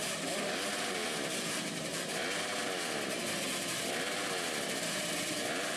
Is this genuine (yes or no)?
yes